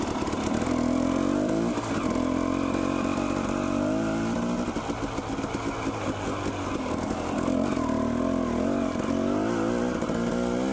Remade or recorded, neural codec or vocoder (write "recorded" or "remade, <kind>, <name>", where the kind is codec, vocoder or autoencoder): recorded